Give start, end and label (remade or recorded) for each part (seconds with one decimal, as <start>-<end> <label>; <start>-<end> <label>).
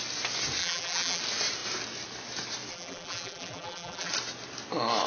0.0-0.6 recorded; 0.6-1.2 remade; 1.2-2.7 recorded; 2.7-4.1 remade; 4.1-5.1 recorded